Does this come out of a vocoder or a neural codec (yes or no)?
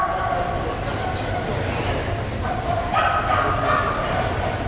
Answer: no